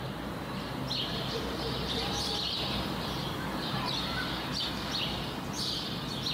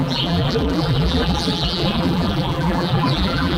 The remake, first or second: second